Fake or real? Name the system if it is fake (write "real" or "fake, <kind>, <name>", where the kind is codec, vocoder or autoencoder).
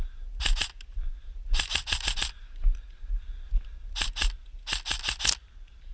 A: real